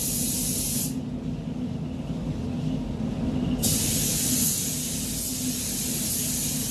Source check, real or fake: real